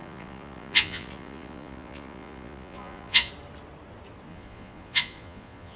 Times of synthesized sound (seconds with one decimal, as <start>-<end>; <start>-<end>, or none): 0.0-3.3; 4.3-5.8